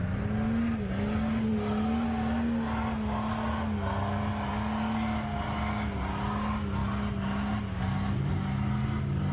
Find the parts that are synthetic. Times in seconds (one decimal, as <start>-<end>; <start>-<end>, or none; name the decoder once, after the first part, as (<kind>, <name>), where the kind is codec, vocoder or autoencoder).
none